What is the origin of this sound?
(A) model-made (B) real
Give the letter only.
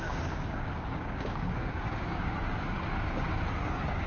A